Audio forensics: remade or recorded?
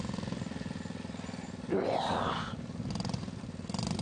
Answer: recorded